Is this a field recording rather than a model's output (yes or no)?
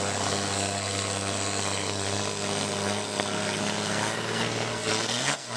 no